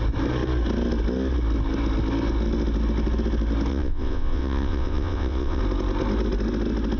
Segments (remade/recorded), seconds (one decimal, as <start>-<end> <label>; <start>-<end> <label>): 0.0-3.7 recorded; 3.7-5.6 remade; 5.6-7.0 recorded